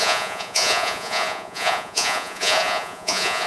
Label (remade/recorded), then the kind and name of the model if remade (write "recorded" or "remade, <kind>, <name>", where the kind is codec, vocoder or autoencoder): remade, vocoder, Vocos